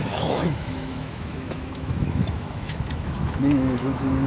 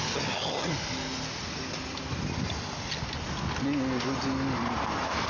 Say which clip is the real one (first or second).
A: second